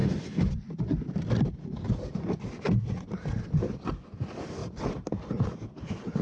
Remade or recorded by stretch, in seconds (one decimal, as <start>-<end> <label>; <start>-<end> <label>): 0.0-4.6 recorded; 4.6-5.3 remade; 5.3-6.2 recorded